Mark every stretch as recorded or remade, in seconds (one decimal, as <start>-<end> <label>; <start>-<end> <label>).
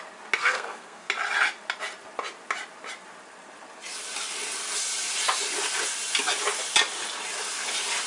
0.0-0.4 recorded; 0.4-1.1 remade; 1.1-8.1 recorded